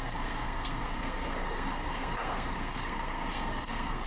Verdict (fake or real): fake